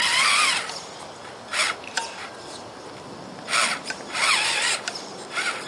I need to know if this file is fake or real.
real